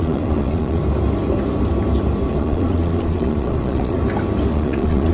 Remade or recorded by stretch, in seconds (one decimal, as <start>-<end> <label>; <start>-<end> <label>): 0.0-0.8 remade; 0.8-2.3 recorded; 2.3-4.0 remade; 4.0-4.5 recorded; 4.5-5.1 remade